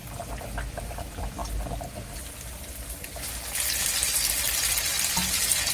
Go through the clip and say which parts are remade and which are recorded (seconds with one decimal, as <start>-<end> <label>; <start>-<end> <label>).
0.0-0.8 recorded; 0.8-1.4 remade; 1.4-4.8 recorded; 4.8-5.7 remade